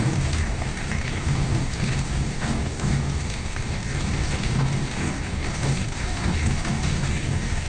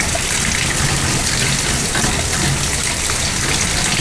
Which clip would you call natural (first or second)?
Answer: second